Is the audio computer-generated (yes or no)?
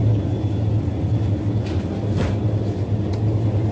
no